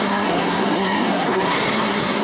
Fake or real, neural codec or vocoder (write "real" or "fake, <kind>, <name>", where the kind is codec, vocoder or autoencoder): fake, codec, SNAC